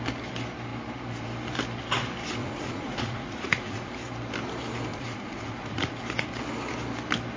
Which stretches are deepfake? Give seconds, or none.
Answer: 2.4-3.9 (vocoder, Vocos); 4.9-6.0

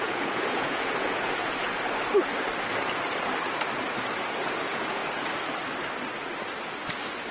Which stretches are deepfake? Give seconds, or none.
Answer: 0.0-1.4 (vocoder, Vocos); 4.3-5.0

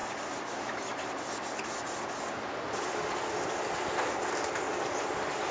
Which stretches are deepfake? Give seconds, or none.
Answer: none

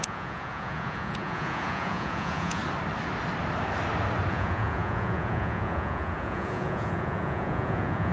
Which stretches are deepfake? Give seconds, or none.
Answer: 0.0-2.6 (vocoder, Vocos); 4.3-8.1